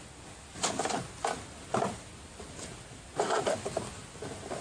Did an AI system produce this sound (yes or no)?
no